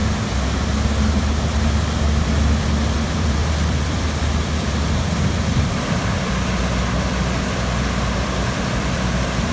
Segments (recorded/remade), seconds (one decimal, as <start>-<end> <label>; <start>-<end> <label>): 0.0-2.0 recorded; 2.0-9.5 remade